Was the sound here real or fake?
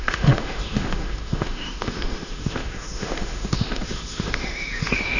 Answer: fake